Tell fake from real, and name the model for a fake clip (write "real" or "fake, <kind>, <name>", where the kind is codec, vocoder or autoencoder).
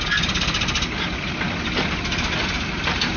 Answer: real